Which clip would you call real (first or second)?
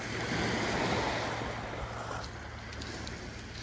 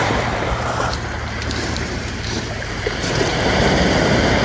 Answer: first